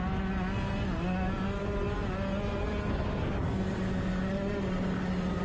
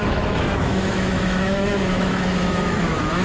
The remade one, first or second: second